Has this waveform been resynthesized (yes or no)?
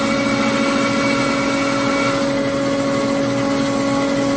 no